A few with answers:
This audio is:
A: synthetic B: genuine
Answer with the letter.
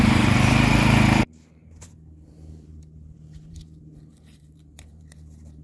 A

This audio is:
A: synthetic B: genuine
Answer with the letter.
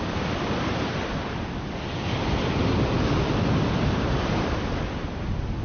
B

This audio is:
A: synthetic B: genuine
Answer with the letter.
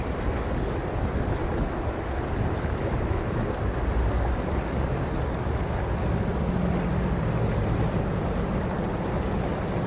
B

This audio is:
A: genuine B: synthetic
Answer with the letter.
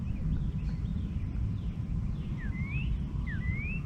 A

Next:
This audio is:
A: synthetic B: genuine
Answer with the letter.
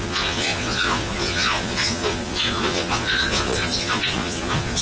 A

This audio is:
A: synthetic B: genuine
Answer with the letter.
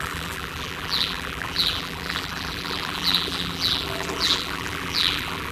A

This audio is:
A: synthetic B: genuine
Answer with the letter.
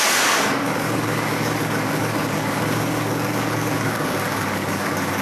A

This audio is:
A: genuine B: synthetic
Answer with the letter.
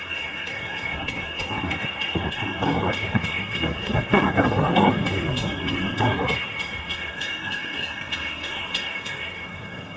B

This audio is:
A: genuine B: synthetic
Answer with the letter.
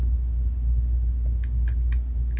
A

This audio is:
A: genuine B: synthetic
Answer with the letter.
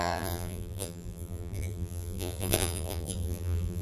B